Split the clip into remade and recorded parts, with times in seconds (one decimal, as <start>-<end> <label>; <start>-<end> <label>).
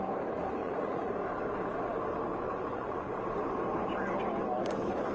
0.0-0.6 recorded; 0.6-1.1 remade; 1.1-2.3 recorded; 2.3-3.2 remade; 3.2-5.1 recorded